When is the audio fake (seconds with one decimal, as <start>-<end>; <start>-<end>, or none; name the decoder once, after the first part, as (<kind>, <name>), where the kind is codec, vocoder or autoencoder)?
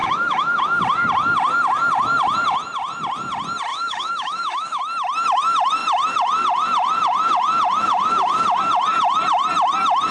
0.0-0.6 (autoencoder, DAC-VAE); 3.7-4.8